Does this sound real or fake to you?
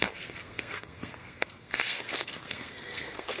fake